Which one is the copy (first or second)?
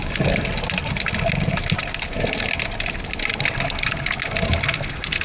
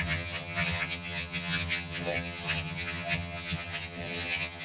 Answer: second